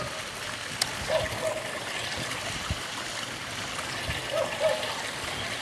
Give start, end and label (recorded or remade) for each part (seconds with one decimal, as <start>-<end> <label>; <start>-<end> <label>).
0.0-5.6 recorded